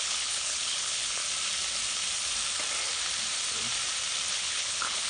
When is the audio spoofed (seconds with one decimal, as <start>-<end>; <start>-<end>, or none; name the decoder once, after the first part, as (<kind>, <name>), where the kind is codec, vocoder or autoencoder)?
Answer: 0.0-1.2 (codec, HILCodec); 4.3-5.1